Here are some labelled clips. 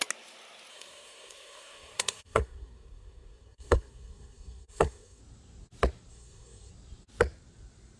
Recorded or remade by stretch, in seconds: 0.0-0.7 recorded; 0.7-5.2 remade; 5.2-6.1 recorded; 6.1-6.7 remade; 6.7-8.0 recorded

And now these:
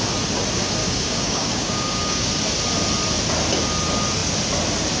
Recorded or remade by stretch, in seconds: 0.0-0.8 recorded; 0.8-2.3 remade; 2.3-5.0 recorded

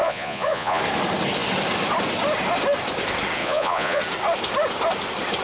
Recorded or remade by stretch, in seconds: 0.0-0.8 remade; 0.8-3.4 recorded; 3.4-4.0 remade; 4.0-5.4 recorded

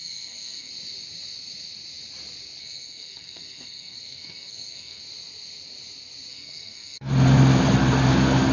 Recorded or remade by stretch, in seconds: 0.0-0.7 remade; 0.7-2.6 recorded; 2.6-5.0 remade; 5.0-6.3 recorded; 6.3-7.1 remade; 7.1-8.5 recorded

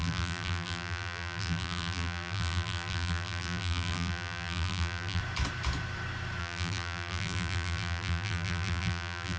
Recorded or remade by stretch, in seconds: 0.0-5.2 remade; 5.2-6.4 recorded; 6.4-9.4 remade